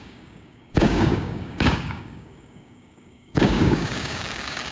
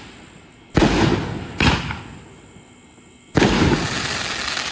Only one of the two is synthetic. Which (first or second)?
first